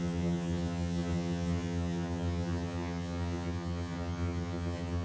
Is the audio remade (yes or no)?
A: yes